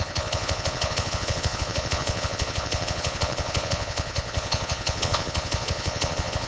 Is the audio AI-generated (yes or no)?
yes